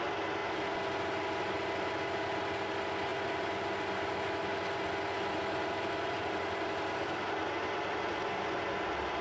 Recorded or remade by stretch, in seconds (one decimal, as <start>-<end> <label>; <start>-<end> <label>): 0.0-9.2 recorded